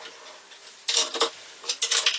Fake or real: real